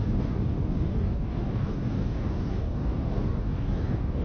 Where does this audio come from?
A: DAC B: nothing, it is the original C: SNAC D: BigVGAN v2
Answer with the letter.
A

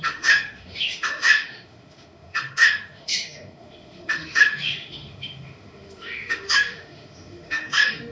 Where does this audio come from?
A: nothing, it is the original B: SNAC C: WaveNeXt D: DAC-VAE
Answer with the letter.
D